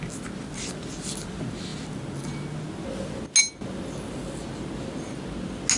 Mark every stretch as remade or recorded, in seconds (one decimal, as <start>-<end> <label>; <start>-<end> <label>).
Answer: 0.0-5.8 recorded